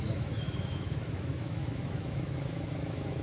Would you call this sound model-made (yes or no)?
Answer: yes